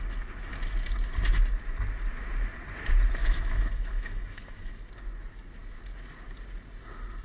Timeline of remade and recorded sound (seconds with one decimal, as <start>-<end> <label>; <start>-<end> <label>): 0.0-3.2 recorded; 3.2-4.9 remade; 4.9-7.2 recorded